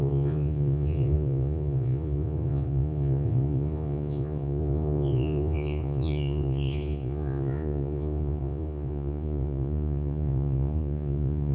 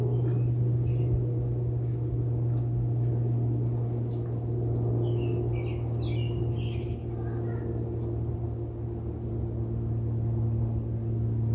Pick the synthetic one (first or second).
first